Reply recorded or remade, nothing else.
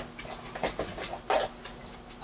recorded